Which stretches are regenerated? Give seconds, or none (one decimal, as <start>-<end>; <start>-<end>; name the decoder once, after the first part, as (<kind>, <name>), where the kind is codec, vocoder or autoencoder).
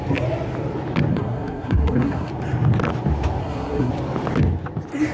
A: 1.1-2.3 (codec, SNAC); 3.4-3.9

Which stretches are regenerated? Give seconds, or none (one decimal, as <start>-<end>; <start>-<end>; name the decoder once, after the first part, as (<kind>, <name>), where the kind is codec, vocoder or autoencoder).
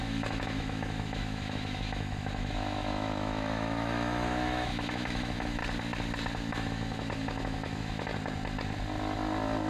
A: 0.0-5.6 (autoencoder, DAC-VAE); 6.5-8.1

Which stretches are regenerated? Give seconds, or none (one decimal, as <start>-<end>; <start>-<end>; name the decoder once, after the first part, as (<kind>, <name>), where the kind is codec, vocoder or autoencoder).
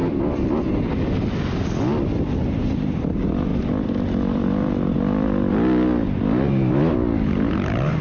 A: none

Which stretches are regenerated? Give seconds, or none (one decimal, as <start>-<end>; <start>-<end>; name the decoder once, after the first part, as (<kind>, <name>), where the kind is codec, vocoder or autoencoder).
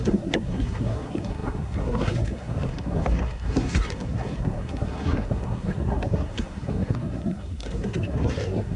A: 0.0-8.8 (codec, SNAC)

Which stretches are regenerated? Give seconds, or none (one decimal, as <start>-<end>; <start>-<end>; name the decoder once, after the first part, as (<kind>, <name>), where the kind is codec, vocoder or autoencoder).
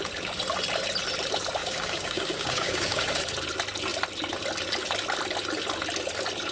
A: 1.6-3.2 (codec, DAC)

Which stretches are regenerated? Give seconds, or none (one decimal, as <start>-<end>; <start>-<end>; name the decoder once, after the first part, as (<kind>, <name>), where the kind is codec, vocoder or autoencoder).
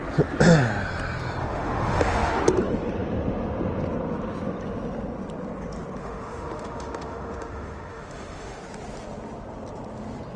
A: 1.4-2.4 (autoencoder, DAC-VAE); 6.0-8.6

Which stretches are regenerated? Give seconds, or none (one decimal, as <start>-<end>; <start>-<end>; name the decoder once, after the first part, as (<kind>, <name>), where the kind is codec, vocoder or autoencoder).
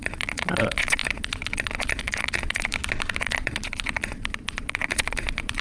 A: 0.0-2.7 (vocoder, Vocos); 3.2-5.6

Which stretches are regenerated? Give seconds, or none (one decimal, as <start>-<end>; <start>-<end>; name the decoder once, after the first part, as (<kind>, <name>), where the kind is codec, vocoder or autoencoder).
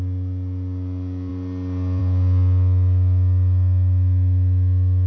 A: none